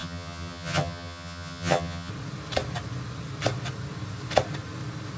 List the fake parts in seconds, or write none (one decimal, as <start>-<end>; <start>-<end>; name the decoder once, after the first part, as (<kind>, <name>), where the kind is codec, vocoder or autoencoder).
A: 0.0-2.1 (vocoder, HiFi-GAN)